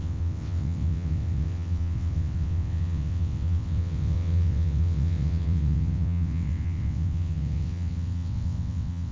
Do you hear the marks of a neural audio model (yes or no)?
yes